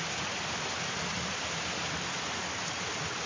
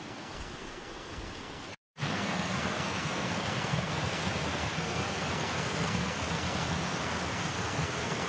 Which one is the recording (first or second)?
first